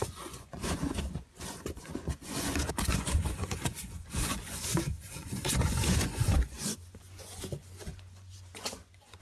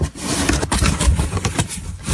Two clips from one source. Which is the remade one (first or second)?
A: first